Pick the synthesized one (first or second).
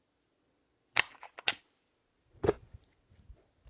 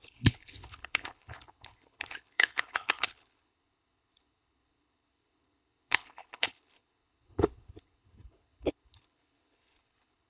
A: second